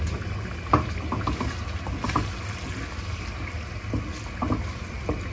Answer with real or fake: real